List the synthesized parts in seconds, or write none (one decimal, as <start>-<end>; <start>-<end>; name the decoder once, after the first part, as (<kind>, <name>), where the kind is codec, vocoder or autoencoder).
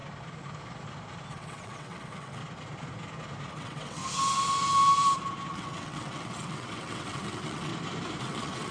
1.3-2.4 (vocoder, WaveNeXt); 3.5-4.0; 5.5-7.7; 8.2-8.7